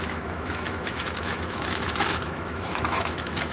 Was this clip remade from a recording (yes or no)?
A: yes